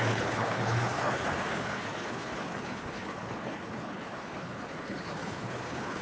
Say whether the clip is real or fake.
fake